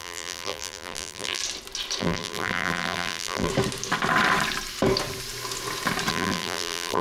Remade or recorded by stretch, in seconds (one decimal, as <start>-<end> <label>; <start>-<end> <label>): 0.0-1.4 remade; 1.4-2.0 recorded; 2.0-3.5 remade; 3.5-6.1 recorded; 6.1-7.0 remade